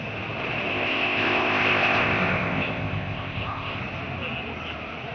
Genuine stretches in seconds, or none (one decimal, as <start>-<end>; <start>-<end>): 0.0-0.7; 3.8-5.1